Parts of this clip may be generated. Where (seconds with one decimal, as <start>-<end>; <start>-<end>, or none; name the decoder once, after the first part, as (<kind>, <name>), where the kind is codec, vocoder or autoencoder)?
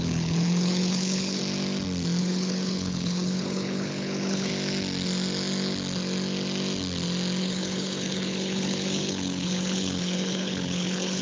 0.0-1.4 (codec, HILCodec); 2.2-4.5; 7.4-11.2